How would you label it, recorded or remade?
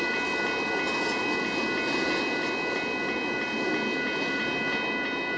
recorded